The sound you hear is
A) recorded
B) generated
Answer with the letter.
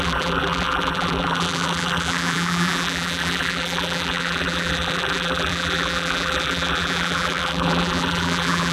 B